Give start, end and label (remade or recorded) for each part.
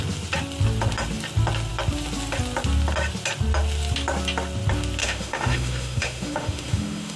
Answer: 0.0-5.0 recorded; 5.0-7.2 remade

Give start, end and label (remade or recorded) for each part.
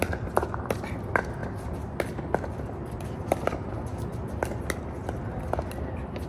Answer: 0.0-6.3 recorded